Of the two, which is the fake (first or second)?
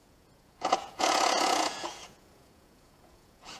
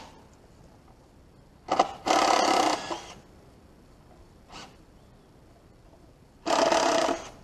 first